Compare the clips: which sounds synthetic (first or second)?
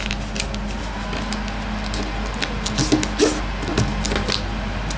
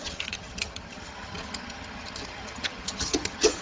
second